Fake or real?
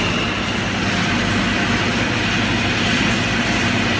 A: real